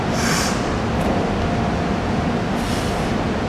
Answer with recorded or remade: recorded